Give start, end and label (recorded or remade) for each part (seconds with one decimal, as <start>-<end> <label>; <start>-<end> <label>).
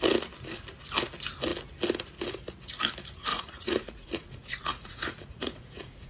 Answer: 0.0-3.3 recorded; 3.3-6.1 remade